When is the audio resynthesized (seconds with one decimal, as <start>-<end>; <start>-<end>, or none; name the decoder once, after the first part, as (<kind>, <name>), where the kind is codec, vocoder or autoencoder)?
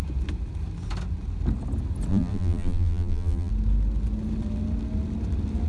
2.1-3.5 (vocoder, BigVGAN v2)